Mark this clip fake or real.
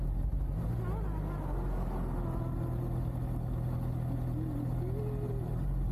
real